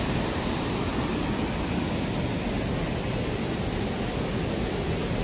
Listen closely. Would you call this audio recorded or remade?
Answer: recorded